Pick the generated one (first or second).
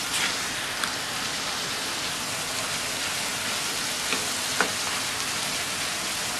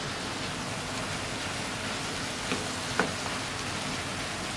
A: first